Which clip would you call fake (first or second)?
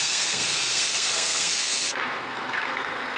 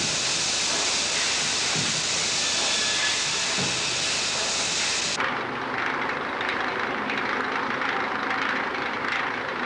first